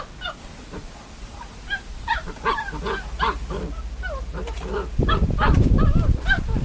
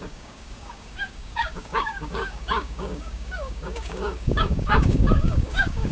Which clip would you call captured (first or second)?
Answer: first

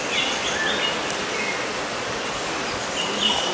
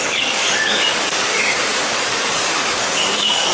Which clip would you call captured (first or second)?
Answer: first